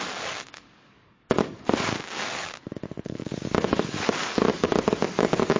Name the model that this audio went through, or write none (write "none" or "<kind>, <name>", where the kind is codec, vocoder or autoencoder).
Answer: codec, DAC